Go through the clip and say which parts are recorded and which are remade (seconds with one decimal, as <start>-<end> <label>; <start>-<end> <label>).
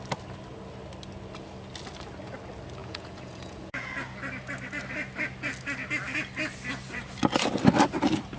0.0-2.8 recorded; 2.8-3.9 remade; 3.9-8.4 recorded